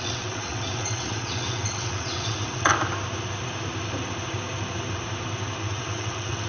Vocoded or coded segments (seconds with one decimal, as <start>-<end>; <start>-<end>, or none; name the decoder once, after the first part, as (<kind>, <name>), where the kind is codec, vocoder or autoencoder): 0.0-2.7 (vocoder, WaveNeXt); 5.7-6.5